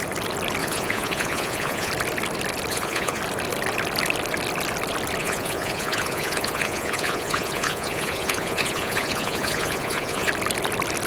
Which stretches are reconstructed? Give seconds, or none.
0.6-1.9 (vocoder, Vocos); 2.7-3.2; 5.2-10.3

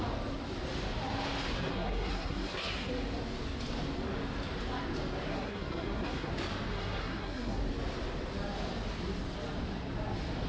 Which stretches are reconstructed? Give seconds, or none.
1.7-2.9 (codec, SNAC); 5.3-6.3; 6.7-7.6

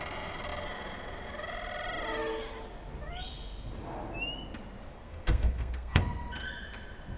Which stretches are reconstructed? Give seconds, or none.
4.9-6.0 (codec, SNAC)